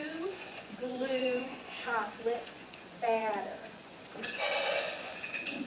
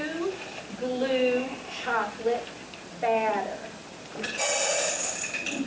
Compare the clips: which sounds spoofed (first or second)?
first